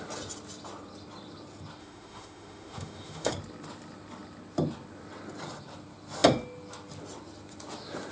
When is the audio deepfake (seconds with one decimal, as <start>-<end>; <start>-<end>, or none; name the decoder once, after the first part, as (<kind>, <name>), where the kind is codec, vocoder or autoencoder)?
1.8-3.3 (autoencoder, DAC-VAE)

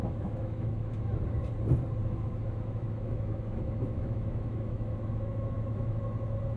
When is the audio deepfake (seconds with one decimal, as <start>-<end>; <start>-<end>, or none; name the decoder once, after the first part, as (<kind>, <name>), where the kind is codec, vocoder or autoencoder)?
0.0-1.0 (autoencoder, DAC-VAE); 2.0-6.0

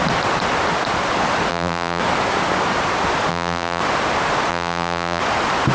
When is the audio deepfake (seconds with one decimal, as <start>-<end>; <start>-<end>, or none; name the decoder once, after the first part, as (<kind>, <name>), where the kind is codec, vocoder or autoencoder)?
1.5-2.0 (vocoder, BigVGAN v2); 3.3-3.8; 4.5-5.2

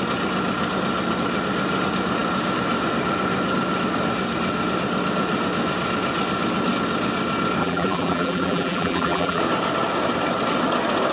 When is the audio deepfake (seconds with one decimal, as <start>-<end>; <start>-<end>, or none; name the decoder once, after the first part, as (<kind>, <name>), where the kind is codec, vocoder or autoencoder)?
7.6-9.4 (vocoder, BigVGAN v2)

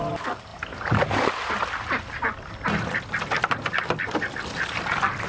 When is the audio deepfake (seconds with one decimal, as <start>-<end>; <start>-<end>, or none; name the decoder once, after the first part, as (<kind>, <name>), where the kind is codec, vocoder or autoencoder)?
none